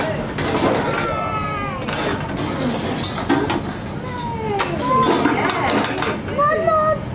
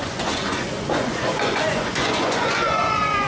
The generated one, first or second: second